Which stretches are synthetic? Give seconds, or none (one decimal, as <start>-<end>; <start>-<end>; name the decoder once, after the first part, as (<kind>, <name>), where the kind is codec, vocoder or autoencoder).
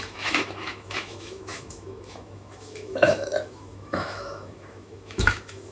0.0-5.7 (autoencoder, DAC-VAE)